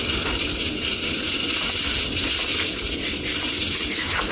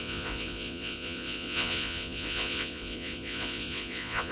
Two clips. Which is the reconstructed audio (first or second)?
second